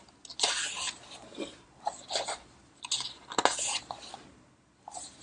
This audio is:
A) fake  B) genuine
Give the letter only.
B